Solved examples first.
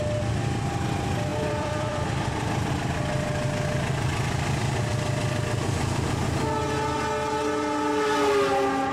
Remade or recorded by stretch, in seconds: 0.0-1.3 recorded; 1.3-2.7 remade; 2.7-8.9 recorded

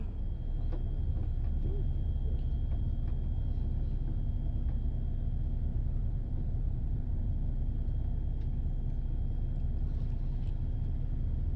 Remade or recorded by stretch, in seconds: 0.0-5.7 recorded; 5.7-7.3 remade; 7.3-11.6 recorded

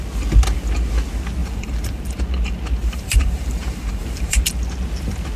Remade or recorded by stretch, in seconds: 0.0-1.4 recorded; 1.4-2.2 remade; 2.2-2.8 recorded; 2.8-4.5 remade; 4.5-5.4 recorded

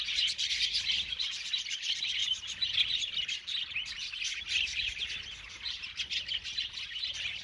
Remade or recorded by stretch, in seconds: 0.0-2.2 recorded; 2.2-5.2 remade; 5.2-7.4 recorded

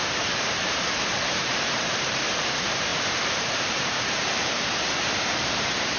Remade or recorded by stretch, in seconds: 0.0-6.0 remade

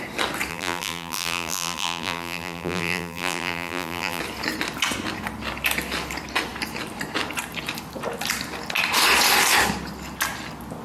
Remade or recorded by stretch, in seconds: 0.0-0.5 recorded; 0.5-4.2 remade; 4.2-10.8 recorded